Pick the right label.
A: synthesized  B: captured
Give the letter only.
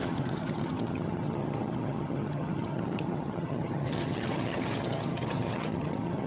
A